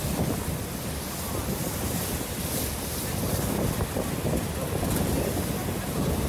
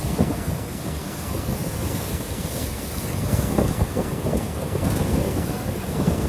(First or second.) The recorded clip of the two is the first